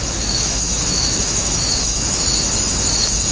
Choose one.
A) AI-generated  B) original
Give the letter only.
A